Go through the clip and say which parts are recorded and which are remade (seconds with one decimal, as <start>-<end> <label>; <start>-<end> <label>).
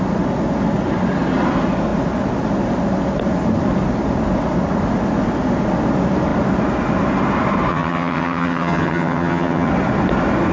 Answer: 0.0-7.7 recorded; 7.7-9.7 remade; 9.7-10.5 recorded